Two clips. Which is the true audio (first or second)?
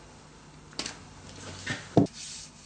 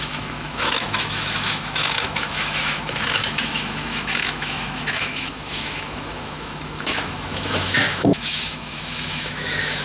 first